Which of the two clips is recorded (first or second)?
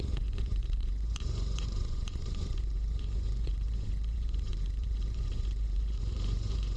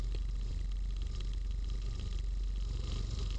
second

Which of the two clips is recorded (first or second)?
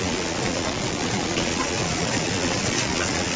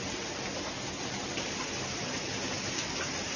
second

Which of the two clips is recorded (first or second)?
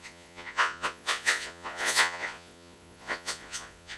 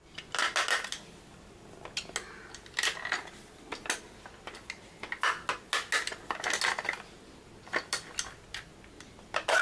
second